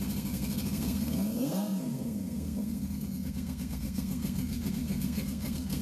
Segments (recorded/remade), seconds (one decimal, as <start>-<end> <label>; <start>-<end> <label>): 0.0-5.8 remade